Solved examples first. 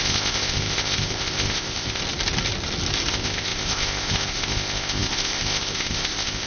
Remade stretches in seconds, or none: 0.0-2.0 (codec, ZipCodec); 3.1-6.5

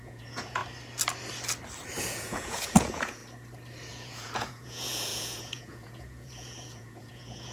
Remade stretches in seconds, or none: 0.0-0.6 (vocoder, Vocos); 2.0-3.2; 3.9-7.5

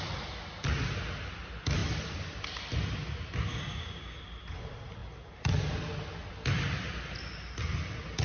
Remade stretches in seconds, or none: 3.5-4.2 (codec, DAC)

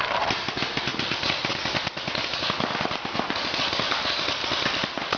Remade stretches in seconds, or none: none